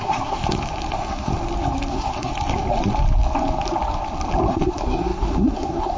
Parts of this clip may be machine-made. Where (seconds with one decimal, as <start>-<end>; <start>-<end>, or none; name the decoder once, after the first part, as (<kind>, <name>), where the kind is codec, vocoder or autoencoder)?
0.0-0.4 (codec, SNAC); 0.9-1.3; 1.9-2.3; 4.5-6.0